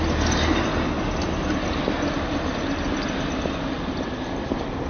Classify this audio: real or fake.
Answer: real